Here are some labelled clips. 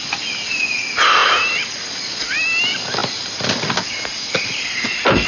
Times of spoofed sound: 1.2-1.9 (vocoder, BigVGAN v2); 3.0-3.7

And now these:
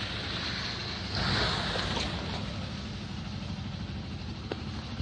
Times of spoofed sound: none

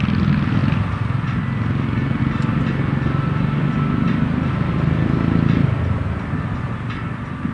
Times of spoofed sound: none

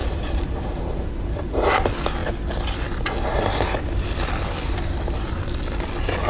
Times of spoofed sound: 0.0-1.7 (vocoder, BigVGAN v2)

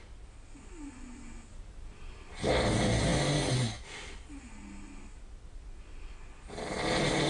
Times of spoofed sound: 1.5-2.5 (vocoder, BigVGAN v2)

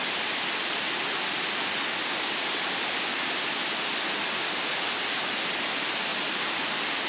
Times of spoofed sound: 6.1-7.1 (vocoder, BigVGAN v2)

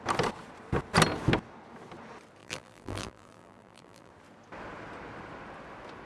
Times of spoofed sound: 2.4-4.1 (vocoder, BigVGAN v2)

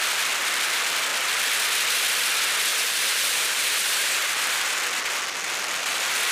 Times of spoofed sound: 2.7-4.6 (vocoder, BigVGAN v2)